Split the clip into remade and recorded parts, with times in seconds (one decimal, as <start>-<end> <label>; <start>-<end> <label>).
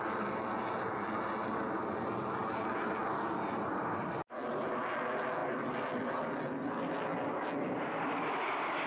0.0-8.9 recorded